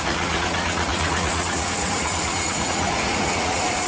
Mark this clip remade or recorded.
remade